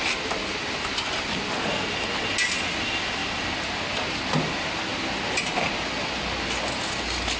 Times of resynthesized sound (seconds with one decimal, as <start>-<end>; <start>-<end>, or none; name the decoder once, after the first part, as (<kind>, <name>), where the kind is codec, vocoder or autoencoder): none